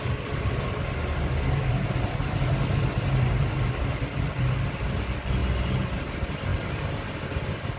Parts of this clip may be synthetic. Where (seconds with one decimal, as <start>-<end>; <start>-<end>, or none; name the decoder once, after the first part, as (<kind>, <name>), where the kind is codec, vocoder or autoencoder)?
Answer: none